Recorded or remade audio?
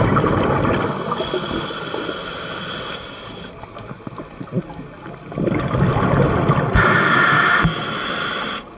recorded